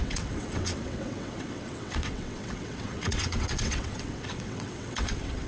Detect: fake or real fake